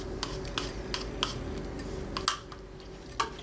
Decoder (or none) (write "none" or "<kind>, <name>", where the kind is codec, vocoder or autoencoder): none